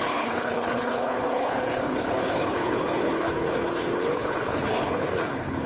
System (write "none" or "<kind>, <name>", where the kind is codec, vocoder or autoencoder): codec, HILCodec